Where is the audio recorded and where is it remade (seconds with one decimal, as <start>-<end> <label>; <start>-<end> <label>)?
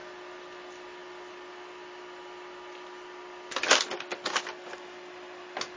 0.0-5.8 recorded